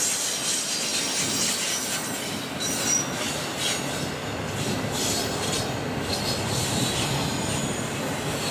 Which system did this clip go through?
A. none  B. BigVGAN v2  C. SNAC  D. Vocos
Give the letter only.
A